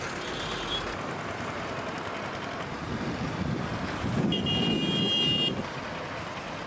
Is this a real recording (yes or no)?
yes